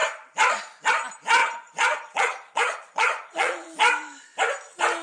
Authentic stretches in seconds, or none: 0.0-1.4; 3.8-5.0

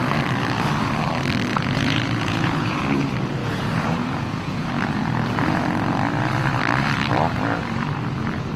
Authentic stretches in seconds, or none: 0.0-1.5; 2.8-3.4; 4.7-8.6

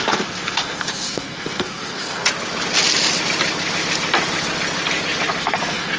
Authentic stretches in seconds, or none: 2.2-5.4

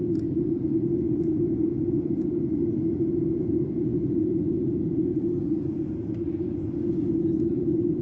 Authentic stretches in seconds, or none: none

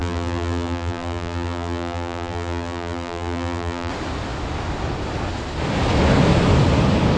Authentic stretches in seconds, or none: 3.9-7.2

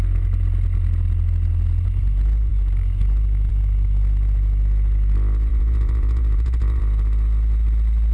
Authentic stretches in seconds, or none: 0.0-5.5; 6.8-8.1